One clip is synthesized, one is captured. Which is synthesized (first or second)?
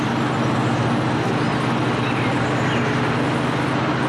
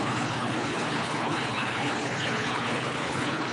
second